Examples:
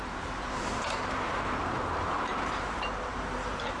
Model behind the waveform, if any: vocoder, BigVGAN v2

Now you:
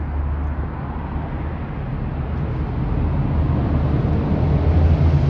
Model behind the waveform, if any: none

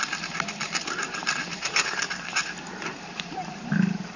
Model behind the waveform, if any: vocoder, BigVGAN v2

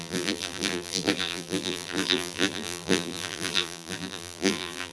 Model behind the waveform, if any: vocoder, BigVGAN v2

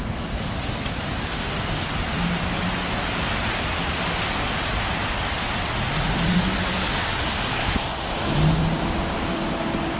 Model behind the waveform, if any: none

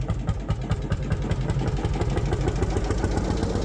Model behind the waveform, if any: none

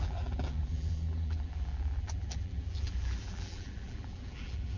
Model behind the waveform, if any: vocoder, BigVGAN v2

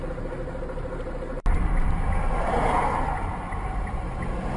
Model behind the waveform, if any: none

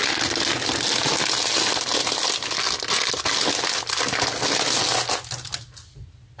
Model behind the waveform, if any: none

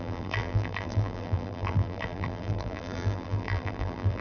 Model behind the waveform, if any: vocoder, BigVGAN v2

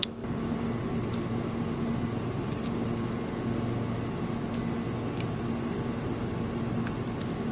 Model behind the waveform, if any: none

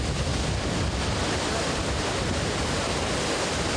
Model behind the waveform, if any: none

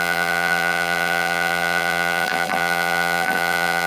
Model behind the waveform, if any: vocoder, BigVGAN v2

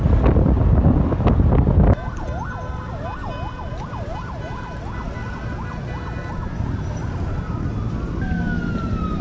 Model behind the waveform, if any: none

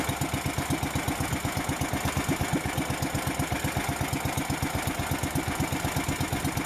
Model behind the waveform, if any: none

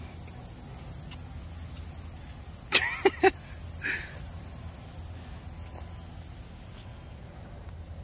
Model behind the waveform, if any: none